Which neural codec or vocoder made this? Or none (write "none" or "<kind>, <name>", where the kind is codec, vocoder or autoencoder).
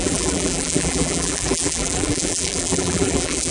vocoder, BigVGAN v2